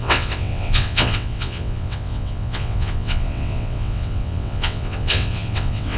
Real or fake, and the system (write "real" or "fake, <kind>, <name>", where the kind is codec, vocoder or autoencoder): fake, vocoder, WaveNeXt